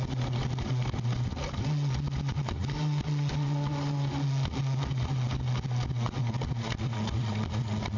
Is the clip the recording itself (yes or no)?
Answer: yes